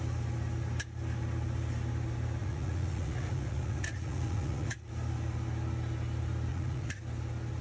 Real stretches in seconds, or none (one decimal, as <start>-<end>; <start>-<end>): 0.0-2.4; 4.9-6.5; 7.0-7.6